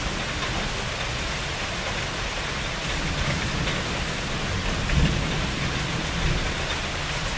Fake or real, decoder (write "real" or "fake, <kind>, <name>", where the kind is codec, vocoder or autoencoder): real